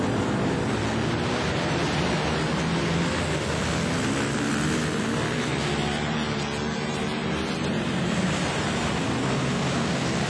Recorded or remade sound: recorded